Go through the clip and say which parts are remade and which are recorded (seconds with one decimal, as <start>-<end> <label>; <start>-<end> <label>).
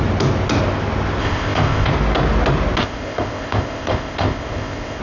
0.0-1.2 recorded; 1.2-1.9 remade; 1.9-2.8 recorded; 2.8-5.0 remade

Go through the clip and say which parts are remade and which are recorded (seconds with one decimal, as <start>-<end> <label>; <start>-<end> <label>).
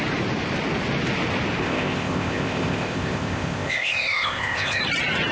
0.0-1.6 recorded; 1.6-4.8 remade; 4.8-5.3 recorded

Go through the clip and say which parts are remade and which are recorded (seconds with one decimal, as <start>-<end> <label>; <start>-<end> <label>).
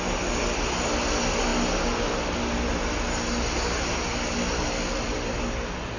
0.0-6.0 recorded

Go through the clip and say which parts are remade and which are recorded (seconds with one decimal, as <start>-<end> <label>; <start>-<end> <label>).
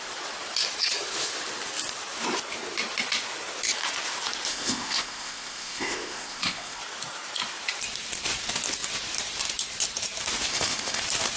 0.0-4.5 recorded; 4.5-6.8 remade; 6.8-10.5 recorded; 10.5-11.0 remade; 11.0-11.4 recorded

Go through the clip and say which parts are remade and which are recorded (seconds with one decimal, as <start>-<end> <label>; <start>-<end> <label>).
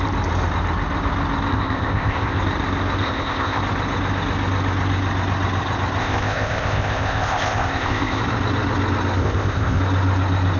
0.0-1.5 recorded; 1.5-2.4 remade; 2.4-3.0 recorded; 3.0-3.6 remade; 3.6-6.0 recorded; 6.0-8.2 remade; 8.2-9.2 recorded; 9.2-9.8 remade; 9.8-10.6 recorded